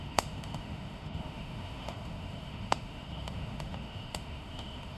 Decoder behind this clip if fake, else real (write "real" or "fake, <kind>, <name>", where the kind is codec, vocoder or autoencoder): fake, autoencoder, DAC-VAE